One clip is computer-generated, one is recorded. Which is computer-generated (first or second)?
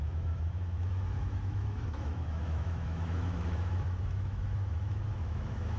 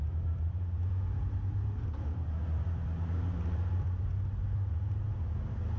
first